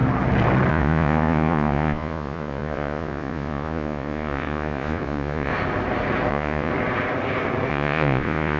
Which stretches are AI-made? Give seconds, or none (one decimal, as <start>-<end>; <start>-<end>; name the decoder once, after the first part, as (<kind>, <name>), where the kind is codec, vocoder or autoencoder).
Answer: 0.7-5.5 (vocoder, Vocos); 6.3-6.7; 7.7-8.6